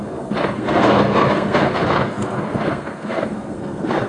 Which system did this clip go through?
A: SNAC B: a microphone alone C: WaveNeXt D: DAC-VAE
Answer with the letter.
A